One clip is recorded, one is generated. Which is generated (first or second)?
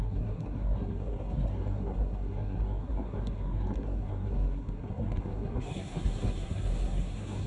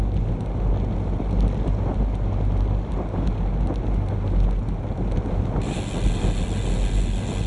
first